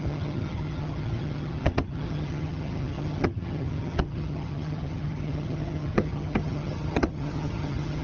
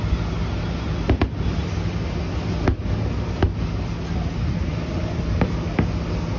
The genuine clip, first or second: second